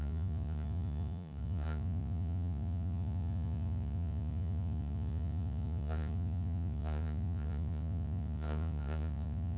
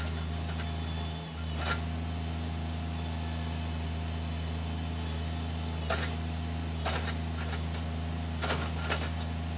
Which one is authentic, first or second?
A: second